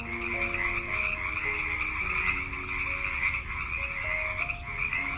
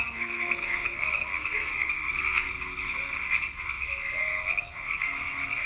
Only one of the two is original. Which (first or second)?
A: first